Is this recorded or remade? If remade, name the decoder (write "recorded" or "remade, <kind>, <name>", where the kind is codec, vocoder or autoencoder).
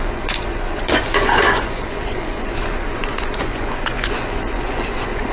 remade, vocoder, Vocos